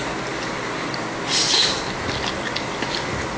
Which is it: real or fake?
real